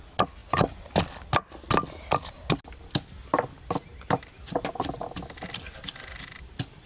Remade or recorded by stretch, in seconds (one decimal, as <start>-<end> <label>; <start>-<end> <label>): 0.0-6.9 recorded